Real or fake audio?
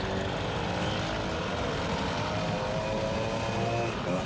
real